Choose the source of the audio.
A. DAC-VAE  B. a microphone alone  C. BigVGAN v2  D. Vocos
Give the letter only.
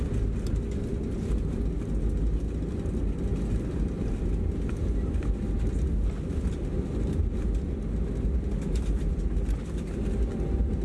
B